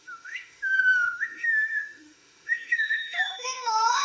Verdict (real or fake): fake